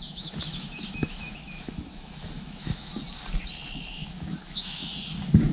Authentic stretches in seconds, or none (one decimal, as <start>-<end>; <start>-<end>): 2.9-3.9; 4.8-5.5